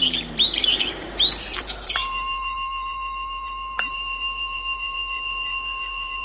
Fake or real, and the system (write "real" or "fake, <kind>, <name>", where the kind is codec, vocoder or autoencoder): fake, vocoder, BigVGAN v2